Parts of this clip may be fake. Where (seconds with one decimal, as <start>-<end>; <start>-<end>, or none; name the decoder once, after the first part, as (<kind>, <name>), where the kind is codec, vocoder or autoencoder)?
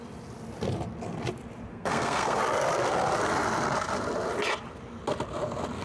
1.7-2.4 (codec, SNAC)